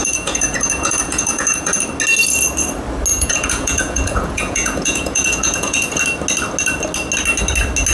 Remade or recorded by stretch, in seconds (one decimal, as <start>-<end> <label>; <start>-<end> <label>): 0.0-1.8 remade; 1.8-3.1 recorded; 3.1-6.0 remade; 6.0-7.9 recorded